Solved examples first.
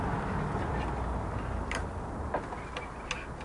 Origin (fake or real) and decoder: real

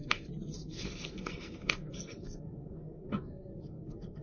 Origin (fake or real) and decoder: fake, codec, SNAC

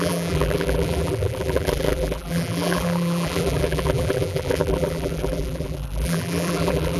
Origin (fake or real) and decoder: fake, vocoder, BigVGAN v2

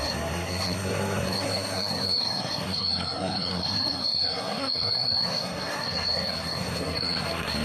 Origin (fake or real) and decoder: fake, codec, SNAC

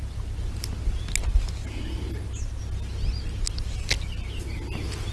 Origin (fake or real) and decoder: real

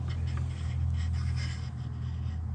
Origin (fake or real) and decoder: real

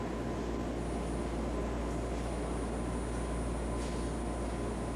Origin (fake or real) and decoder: real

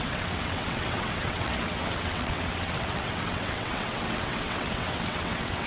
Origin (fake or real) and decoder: fake, vocoder, WaveNeXt